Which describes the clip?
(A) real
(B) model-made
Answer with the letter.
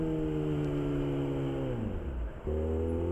A